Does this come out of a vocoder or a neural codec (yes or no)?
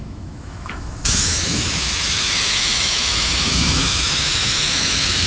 yes